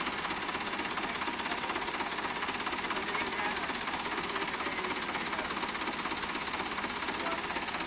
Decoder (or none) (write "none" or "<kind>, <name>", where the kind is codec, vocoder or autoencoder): none